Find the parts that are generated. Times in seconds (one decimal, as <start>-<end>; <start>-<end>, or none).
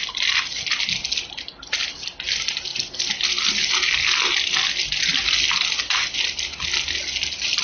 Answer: none